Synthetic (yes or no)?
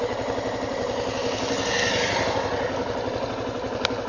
no